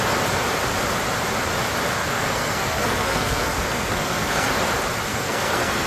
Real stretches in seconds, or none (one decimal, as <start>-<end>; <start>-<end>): 0.0-2.0; 4.6-5.1